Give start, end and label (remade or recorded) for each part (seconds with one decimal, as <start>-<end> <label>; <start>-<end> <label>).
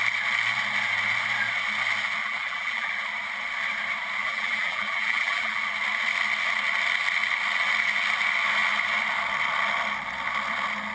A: 0.0-2.2 recorded; 2.2-2.9 remade; 2.9-4.2 recorded; 4.2-5.6 remade; 5.6-10.9 recorded